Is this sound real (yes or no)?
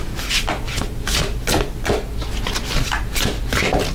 yes